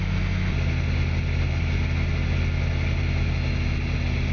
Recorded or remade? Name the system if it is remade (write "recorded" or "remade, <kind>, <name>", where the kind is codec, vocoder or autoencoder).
recorded